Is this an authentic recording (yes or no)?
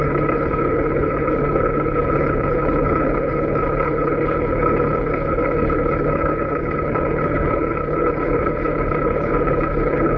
no